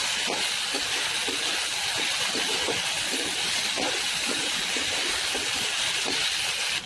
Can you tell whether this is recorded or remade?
recorded